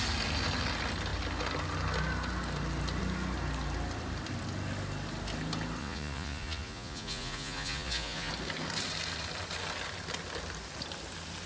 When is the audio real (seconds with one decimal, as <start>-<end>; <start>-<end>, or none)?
0.0-5.8; 8.3-11.5